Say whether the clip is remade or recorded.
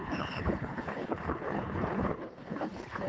remade